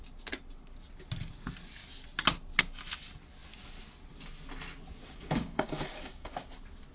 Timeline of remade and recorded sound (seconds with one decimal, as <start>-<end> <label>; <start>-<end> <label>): 0.0-5.0 recorded; 5.0-6.5 remade; 6.5-6.9 recorded